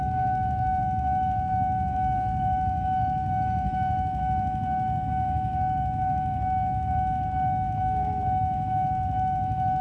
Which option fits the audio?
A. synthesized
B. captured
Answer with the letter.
A